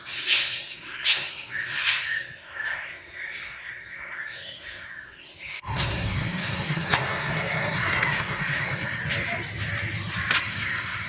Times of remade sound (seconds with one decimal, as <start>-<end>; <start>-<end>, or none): 0.0-9.0; 10.4-11.1